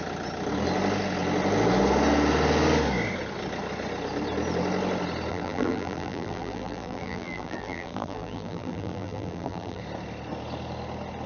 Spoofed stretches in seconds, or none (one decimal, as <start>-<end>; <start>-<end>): 5.3-9.8